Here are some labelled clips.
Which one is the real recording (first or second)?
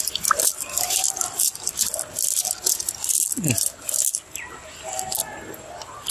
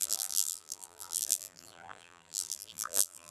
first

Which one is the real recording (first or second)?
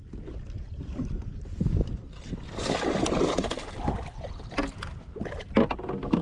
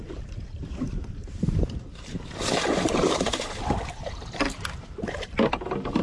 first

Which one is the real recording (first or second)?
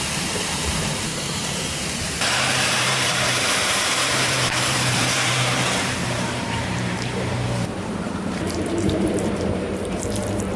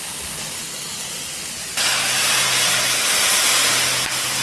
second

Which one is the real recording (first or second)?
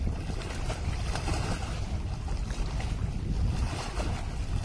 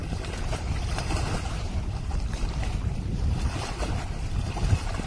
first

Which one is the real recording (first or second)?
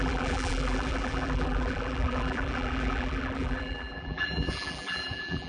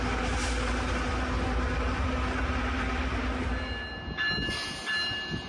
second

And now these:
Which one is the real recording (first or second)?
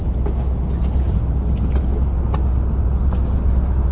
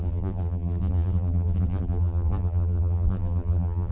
first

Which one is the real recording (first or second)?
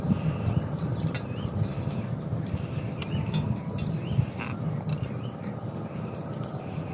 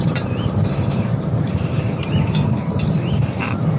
first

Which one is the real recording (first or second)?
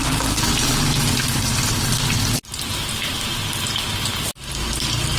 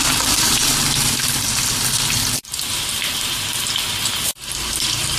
first